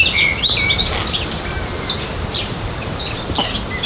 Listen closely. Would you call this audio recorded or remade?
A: recorded